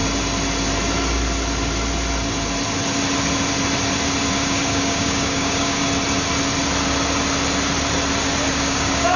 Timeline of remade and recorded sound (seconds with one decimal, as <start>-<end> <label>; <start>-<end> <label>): 0.0-4.3 recorded; 4.3-5.8 remade; 5.8-8.5 recorded; 8.5-9.2 remade